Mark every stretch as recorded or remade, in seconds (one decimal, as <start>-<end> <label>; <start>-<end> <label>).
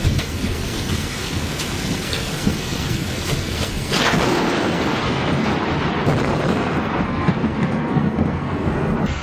0.0-5.5 remade; 5.5-6.2 recorded; 6.2-9.2 remade